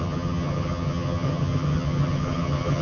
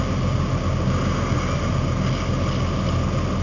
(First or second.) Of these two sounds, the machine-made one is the first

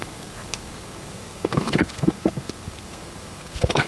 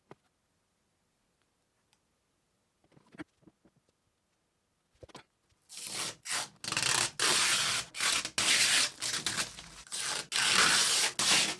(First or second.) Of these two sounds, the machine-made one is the first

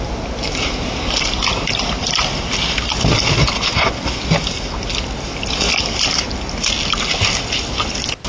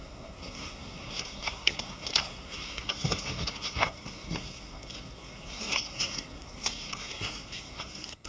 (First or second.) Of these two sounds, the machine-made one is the second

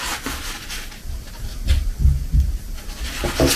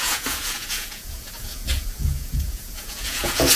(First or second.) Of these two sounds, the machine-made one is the second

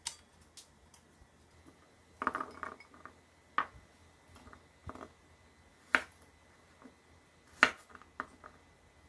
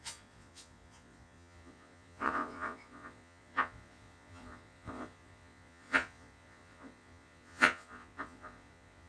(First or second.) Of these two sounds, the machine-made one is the second